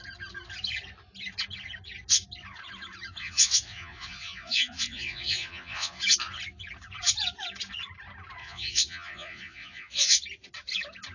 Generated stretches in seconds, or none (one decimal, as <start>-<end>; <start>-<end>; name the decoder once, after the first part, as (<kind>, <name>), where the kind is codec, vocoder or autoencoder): 3.2-6.0 (vocoder, Vocos); 8.4-10.2